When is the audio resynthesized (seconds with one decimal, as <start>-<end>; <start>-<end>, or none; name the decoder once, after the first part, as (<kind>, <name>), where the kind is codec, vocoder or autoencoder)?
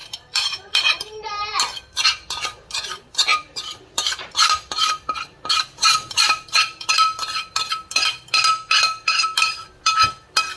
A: 0.0-1.5 (vocoder, BigVGAN v2); 3.3-6.8